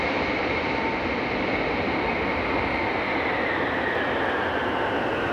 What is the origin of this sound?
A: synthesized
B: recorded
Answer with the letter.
B